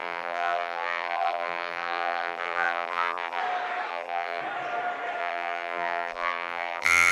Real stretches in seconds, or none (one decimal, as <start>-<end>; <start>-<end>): 3.4-3.9; 4.4-5.2